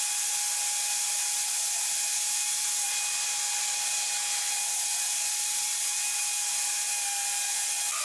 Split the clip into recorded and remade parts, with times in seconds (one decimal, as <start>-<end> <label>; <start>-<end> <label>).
0.0-8.0 recorded